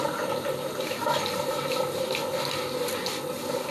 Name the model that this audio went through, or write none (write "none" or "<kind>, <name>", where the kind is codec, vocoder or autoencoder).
none